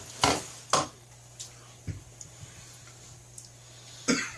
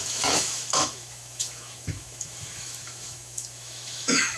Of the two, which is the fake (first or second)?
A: second